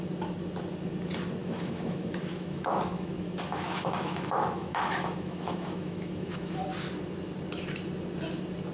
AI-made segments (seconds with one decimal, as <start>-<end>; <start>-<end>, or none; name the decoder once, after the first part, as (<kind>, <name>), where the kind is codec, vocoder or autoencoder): 1.4-6.6 (autoencoder, DAC-VAE)